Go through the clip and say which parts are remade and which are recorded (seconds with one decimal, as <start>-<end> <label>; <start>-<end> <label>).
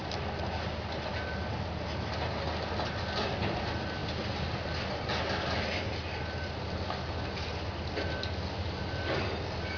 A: 0.0-9.8 recorded